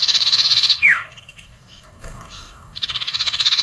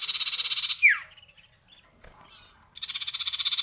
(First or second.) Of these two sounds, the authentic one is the second